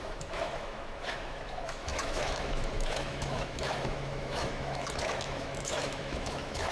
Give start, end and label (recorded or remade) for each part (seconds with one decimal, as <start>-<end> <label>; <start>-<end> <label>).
0.0-6.7 remade